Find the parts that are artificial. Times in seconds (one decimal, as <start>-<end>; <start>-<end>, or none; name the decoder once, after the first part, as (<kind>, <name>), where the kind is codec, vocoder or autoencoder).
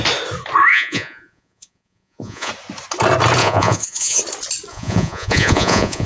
0.7-2.5 (vocoder, Vocos); 3.4-4.2; 4.7-6.1